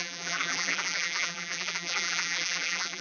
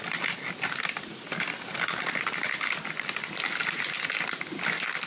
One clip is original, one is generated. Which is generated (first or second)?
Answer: first